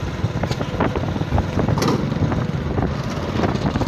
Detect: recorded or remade recorded